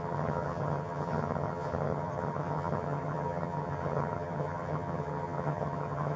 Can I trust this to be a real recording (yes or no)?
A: no